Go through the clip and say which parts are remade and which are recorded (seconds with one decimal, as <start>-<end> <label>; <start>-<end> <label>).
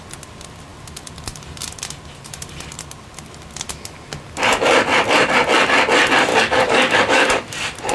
0.0-6.3 recorded; 6.3-7.3 remade; 7.3-7.9 recorded